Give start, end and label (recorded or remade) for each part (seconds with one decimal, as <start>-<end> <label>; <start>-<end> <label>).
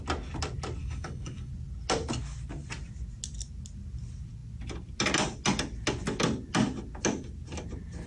0.0-0.8 recorded; 0.8-1.5 remade; 1.5-8.1 recorded